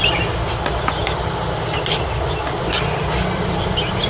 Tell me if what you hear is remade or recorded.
remade